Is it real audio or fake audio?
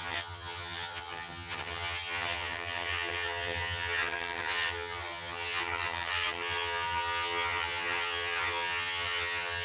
fake